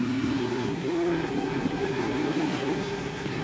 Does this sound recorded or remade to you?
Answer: remade